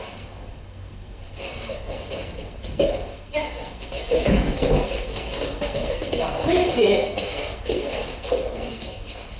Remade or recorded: remade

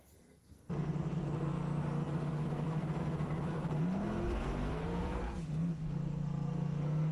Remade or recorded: remade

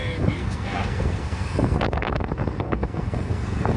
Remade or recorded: remade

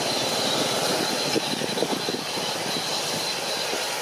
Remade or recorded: recorded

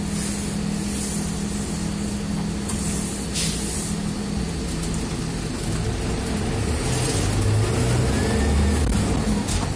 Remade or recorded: recorded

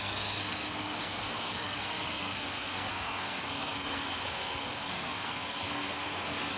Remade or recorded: remade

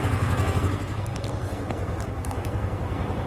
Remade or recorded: remade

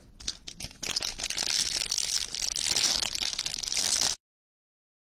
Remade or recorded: recorded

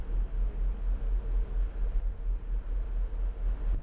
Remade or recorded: recorded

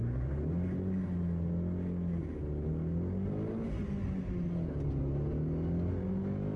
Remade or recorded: recorded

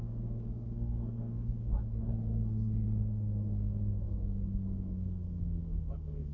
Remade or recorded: remade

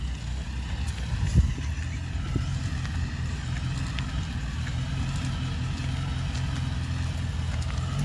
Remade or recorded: recorded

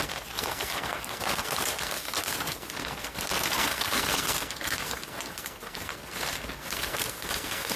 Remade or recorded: remade